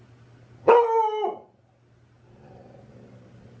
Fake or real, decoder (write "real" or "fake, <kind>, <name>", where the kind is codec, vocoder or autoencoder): real